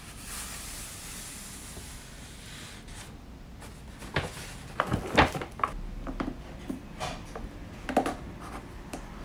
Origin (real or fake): real